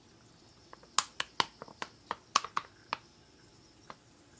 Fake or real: real